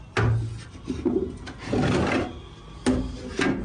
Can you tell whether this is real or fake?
real